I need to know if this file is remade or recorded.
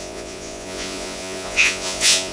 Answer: remade